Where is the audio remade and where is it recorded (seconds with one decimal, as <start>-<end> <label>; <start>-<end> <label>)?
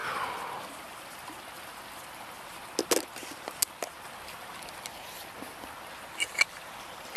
0.0-7.2 recorded